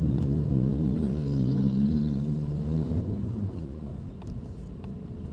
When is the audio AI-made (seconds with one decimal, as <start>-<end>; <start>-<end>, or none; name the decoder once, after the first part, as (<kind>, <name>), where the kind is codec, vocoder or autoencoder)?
0.0-3.9 (vocoder, Vocos)